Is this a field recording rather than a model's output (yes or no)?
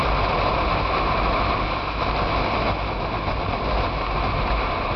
yes